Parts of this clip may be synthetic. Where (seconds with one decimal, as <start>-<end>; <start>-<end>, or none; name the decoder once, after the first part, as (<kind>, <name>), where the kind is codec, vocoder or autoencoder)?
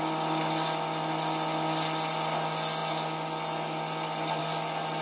none